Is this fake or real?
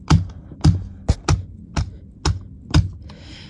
real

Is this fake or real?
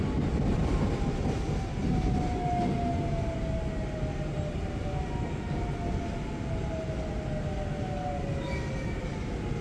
real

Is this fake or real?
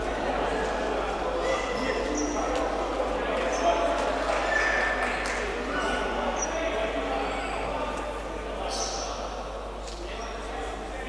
real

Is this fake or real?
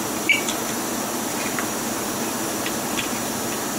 fake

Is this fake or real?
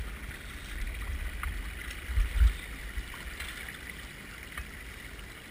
real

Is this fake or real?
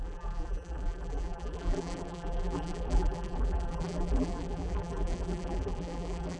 fake